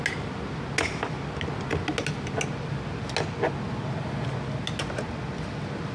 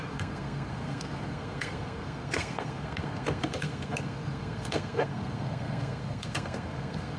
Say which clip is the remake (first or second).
second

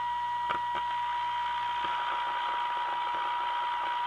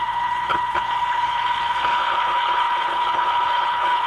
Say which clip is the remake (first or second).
second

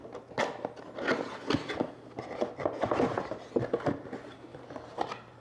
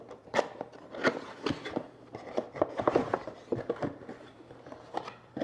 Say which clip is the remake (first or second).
second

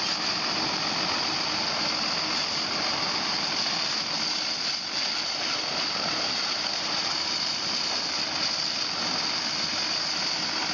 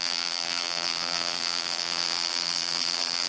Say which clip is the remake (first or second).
second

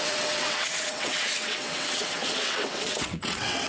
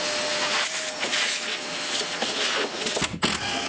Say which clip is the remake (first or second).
first